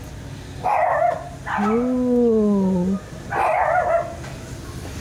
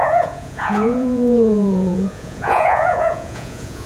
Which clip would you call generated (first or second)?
second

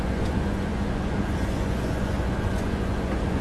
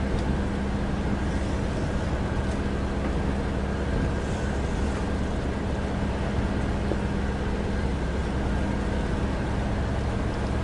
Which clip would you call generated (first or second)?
first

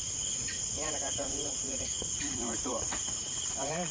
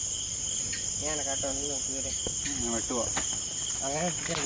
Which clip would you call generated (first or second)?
first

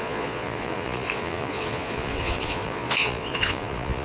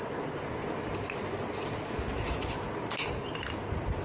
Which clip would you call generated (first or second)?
first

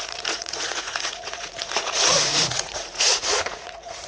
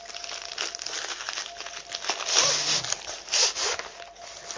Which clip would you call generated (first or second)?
first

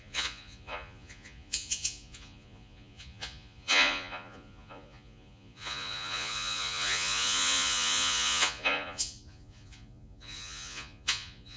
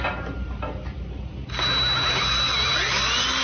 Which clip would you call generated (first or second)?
first